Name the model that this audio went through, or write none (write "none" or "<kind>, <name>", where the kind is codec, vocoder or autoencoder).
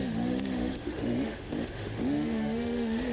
autoencoder, DAC-VAE